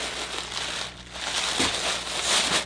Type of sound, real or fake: real